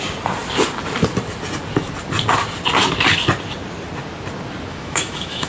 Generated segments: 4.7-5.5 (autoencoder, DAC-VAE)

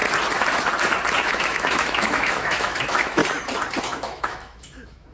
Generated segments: 1.2-3.2 (autoencoder, DAC-VAE); 3.8-5.1

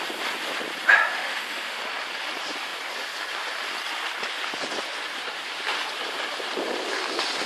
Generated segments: 1.1-1.8 (autoencoder, DAC-VAE)

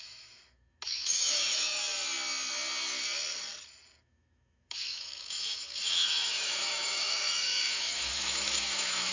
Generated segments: 0.0-1.8 (autoencoder, DAC-VAE); 4.0-9.1

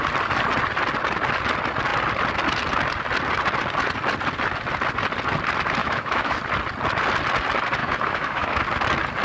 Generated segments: 5.8-6.4 (autoencoder, DAC-VAE); 7.8-8.6

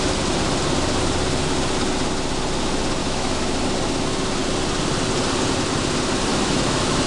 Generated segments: 3.0-3.6 (autoencoder, DAC-VAE); 6.3-7.1

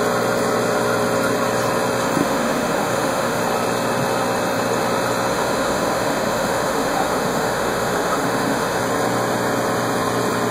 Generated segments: 2.2-3.4 (autoencoder, DAC-VAE); 5.3-8.8